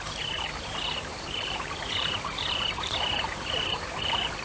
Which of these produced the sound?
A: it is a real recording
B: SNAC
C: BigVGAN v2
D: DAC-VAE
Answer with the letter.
C